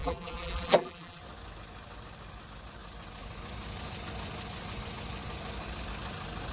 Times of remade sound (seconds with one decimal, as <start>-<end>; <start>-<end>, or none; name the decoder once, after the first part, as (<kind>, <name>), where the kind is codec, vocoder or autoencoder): 0.0-1.2 (vocoder, BigVGAN v2)